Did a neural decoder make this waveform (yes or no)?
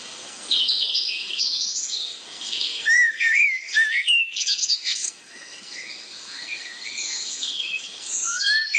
yes